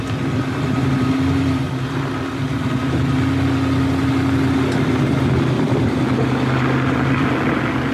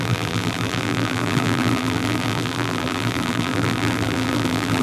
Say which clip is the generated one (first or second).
second